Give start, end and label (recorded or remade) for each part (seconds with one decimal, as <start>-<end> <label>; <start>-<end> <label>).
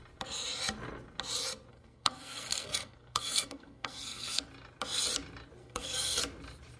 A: 0.0-1.7 recorded; 1.7-4.4 remade; 4.4-5.6 recorded; 5.6-6.2 remade; 6.2-6.8 recorded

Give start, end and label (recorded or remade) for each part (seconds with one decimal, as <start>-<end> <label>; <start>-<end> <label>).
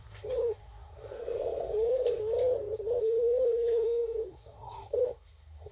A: 0.0-2.2 remade; 2.2-3.0 recorded; 3.0-5.7 remade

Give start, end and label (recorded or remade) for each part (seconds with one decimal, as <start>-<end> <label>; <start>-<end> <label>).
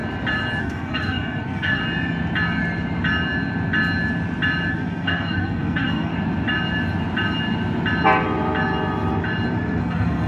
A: 0.0-0.6 recorded; 0.6-1.8 remade; 1.8-4.7 recorded; 4.7-6.1 remade; 6.1-9.8 recorded; 9.8-10.3 remade